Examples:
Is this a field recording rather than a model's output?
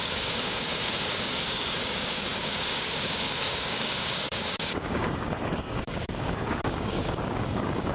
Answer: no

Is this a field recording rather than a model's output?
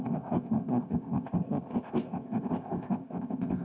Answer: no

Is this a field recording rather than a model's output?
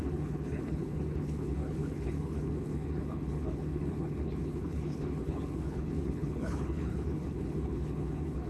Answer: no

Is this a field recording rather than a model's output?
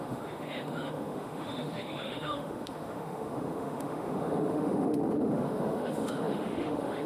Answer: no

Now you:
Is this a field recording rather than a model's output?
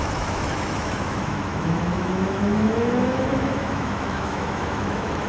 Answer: no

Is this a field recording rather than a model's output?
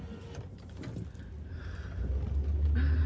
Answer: yes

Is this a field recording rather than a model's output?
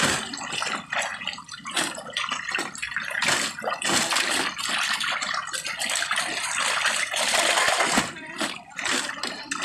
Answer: yes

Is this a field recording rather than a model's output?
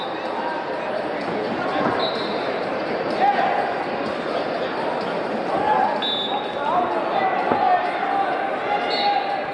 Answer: yes